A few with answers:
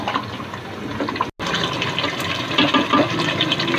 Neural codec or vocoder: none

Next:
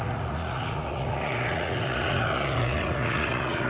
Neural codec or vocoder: vocoder, Vocos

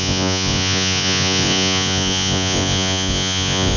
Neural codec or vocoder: vocoder, Vocos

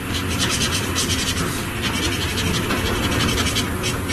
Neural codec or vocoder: none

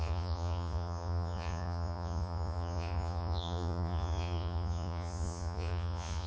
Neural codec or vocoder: vocoder, Vocos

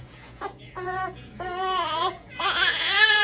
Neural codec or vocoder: vocoder, Vocos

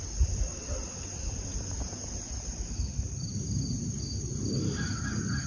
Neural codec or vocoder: none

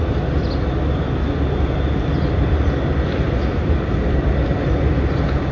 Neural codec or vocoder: none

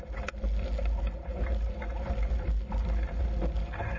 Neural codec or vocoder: none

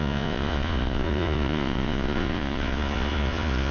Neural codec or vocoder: vocoder, Vocos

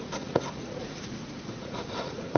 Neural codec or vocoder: vocoder, Vocos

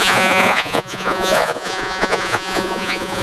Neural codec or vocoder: vocoder, Vocos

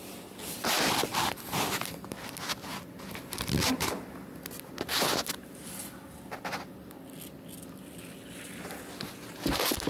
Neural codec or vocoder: none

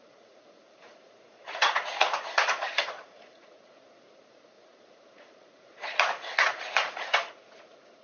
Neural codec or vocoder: vocoder, Vocos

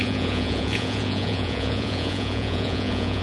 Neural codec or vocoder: vocoder, Vocos